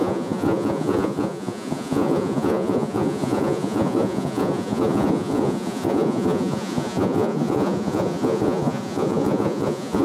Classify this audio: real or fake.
fake